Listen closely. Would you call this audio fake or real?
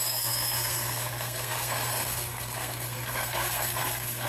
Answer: fake